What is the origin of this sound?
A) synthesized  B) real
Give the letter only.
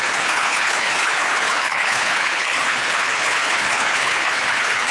A